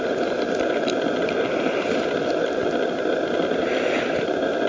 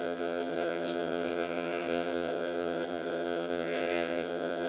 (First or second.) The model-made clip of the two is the second